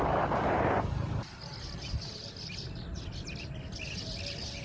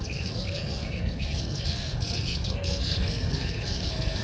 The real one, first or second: first